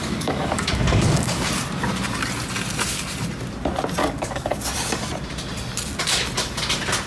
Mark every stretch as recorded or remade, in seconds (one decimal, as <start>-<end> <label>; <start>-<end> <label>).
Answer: 0.0-1.5 remade; 1.5-4.0 recorded; 4.0-4.6 remade; 4.6-7.1 recorded